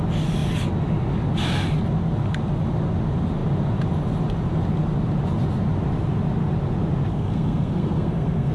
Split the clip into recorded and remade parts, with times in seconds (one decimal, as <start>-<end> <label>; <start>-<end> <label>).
0.0-7.1 recorded; 7.1-8.5 remade

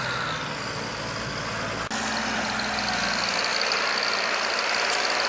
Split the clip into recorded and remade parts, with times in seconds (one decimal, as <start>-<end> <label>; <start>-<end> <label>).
0.0-5.3 recorded